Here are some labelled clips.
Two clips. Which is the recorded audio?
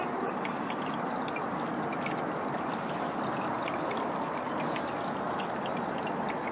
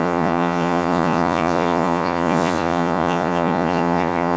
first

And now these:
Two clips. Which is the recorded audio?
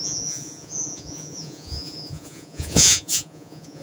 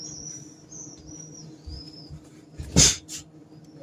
second